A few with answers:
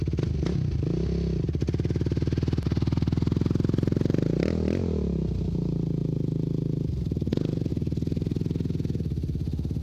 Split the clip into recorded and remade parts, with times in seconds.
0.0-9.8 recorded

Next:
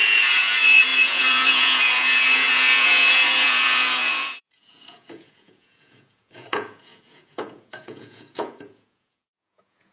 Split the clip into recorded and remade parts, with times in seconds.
0.0-9.9 remade

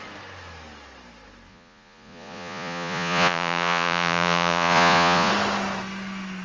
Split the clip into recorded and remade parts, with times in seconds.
0.0-1.5 recorded; 1.5-5.3 remade; 5.3-6.4 recorded

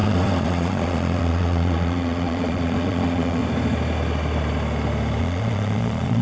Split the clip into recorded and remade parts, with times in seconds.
0.0-3.4 remade; 3.4-5.2 recorded; 5.2-6.2 remade

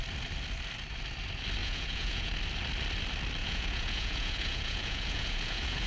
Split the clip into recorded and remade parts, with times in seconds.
0.0-1.6 recorded; 1.6-2.3 remade; 2.3-3.4 recorded; 3.4-5.9 remade

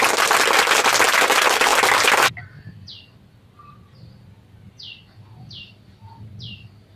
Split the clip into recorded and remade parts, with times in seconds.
0.0-7.0 recorded

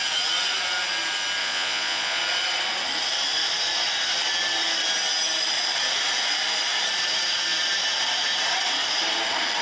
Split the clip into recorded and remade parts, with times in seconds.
0.0-1.4 recorded; 1.4-2.2 remade; 2.2-9.6 recorded

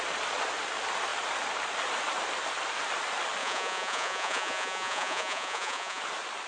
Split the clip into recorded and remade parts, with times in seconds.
0.0-3.4 recorded; 3.4-6.0 remade; 6.0-6.5 recorded